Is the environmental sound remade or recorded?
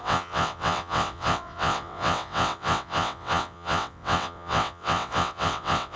remade